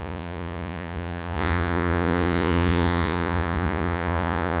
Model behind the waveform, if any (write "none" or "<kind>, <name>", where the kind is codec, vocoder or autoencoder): vocoder, Vocos